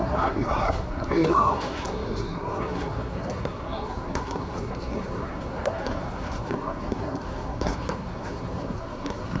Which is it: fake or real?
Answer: fake